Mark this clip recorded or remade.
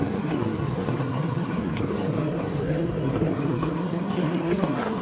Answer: remade